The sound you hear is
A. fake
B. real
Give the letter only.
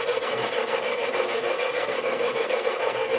A